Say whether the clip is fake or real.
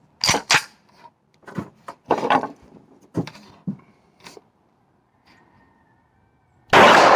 real